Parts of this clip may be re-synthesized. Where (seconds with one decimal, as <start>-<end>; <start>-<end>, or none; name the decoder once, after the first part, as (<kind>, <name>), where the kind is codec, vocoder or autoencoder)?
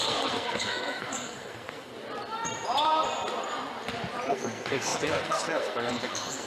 0.0-1.9 (codec, SNAC); 4.3-6.5